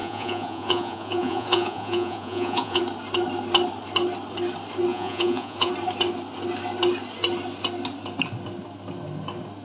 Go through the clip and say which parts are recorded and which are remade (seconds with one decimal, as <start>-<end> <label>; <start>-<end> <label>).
0.0-2.8 remade; 2.8-4.9 recorded; 4.9-5.7 remade; 5.7-9.6 recorded